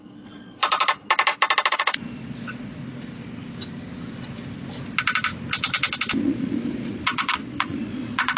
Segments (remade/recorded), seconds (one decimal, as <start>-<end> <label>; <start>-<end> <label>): 0.0-0.6 remade; 0.6-1.7 recorded; 1.7-2.8 remade; 2.8-6.2 recorded; 6.2-8.4 remade